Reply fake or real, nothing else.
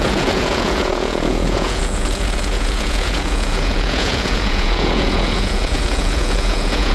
fake